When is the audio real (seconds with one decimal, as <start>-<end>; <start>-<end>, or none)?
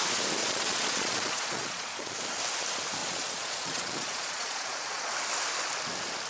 0.0-0.4; 2.2-3.0; 5.1-6.3